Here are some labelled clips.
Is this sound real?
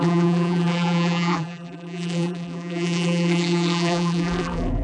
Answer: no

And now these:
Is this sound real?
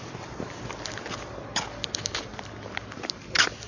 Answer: yes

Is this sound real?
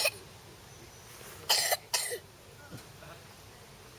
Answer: yes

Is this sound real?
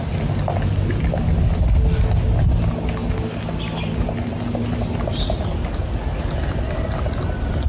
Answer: yes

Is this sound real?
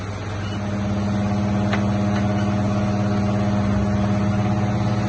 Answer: yes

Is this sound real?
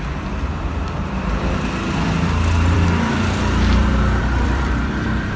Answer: no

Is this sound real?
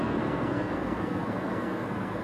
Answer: no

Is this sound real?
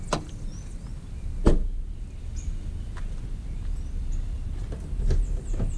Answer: yes